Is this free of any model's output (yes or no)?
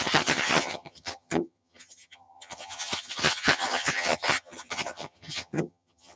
no